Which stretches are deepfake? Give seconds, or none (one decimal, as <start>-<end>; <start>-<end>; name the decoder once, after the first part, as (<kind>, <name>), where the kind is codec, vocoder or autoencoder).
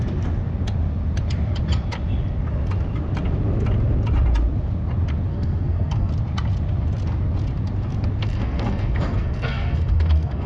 5.3-6.1 (codec, SNAC); 8.2-10.5